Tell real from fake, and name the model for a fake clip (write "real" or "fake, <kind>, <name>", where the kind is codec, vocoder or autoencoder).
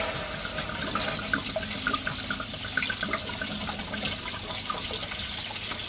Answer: real